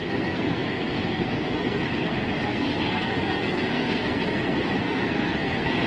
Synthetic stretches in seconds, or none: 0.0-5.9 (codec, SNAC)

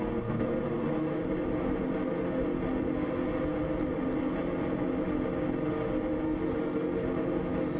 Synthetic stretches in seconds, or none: none

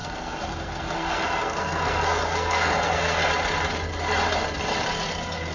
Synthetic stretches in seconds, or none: 0.0-3.3 (codec, SNAC)

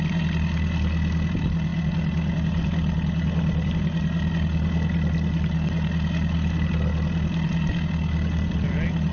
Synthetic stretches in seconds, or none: none

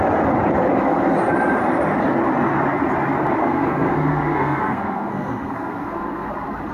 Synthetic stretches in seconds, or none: 3.4-6.3 (codec, SNAC)

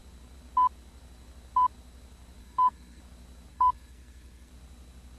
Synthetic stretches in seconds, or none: 2.4-3.0 (codec, SNAC); 3.5-4.5

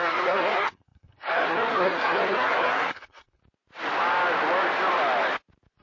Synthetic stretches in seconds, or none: 0.0-3.4 (codec, SNAC)

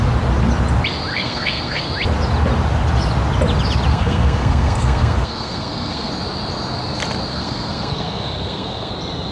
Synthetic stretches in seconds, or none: 1.1-1.8 (codec, SNAC); 3.9-6.1; 7.3-8.9